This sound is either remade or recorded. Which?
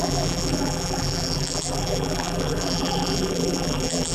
remade